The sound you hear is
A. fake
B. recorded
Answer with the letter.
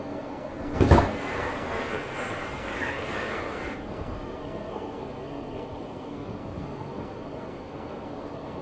A